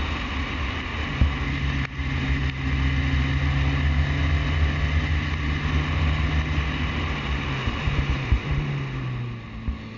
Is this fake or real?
real